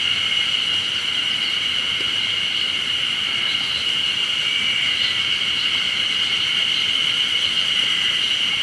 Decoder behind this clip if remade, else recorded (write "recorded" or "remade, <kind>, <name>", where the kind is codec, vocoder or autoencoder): recorded